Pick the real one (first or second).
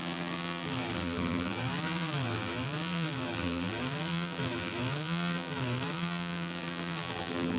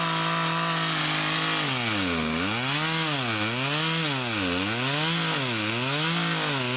second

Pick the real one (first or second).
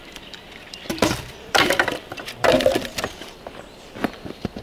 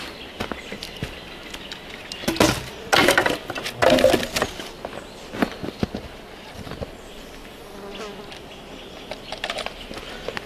second